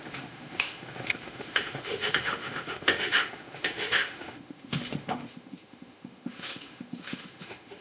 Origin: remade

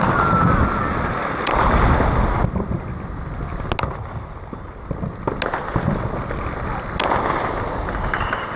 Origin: recorded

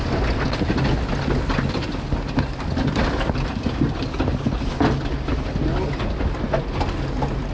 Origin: recorded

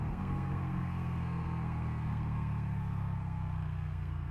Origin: remade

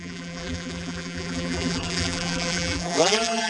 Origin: remade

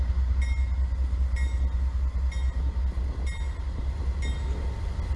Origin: recorded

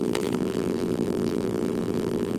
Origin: remade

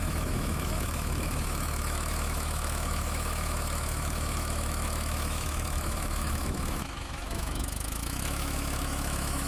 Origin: remade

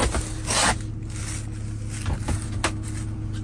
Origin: recorded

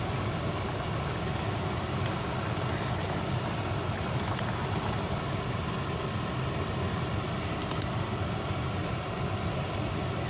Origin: recorded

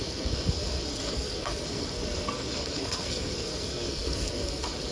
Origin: remade